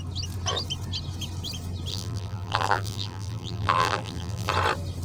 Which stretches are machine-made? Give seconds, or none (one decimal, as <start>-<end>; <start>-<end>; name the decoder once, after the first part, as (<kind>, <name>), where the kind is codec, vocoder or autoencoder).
1.9-4.5 (vocoder, BigVGAN v2)